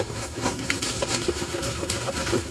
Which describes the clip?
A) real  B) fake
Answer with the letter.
B